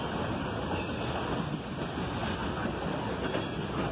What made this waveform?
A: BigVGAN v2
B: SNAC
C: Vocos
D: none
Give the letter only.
D